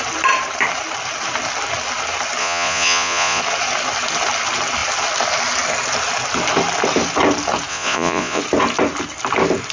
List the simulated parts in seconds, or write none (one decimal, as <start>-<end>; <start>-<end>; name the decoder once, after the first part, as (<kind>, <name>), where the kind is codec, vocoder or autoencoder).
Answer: 2.4-3.4 (vocoder, Vocos); 7.7-8.4